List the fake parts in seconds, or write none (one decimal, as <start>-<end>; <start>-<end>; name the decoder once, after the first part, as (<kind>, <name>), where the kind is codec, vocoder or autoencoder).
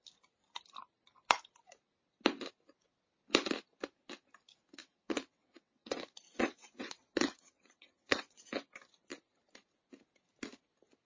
4.8-8.5 (vocoder, WaveNeXt)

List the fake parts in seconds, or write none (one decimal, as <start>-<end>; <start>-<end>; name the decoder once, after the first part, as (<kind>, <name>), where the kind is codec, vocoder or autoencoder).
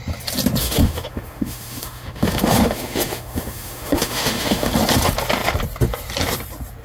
0.6-4.7 (autoencoder, DAC-VAE)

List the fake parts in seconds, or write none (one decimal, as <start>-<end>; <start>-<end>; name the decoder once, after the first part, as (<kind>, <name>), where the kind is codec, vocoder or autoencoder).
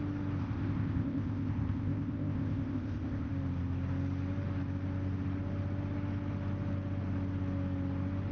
0.4-3.3 (codec, ZipCodec)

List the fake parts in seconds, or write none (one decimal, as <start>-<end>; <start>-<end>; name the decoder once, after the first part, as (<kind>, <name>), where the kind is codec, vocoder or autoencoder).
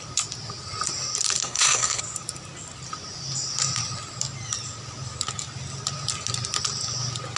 1.4-2.0 (codec, SNAC)